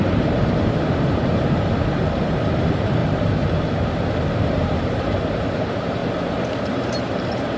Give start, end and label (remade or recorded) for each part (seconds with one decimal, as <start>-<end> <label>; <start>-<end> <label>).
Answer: 0.0-3.0 remade; 3.0-4.3 recorded; 4.3-6.0 remade; 6.0-6.6 recorded; 6.6-7.6 remade